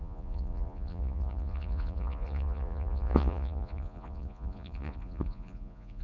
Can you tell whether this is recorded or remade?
remade